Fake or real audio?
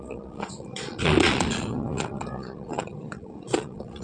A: fake